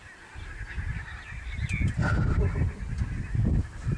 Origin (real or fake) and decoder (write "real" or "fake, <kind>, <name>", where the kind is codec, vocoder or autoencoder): real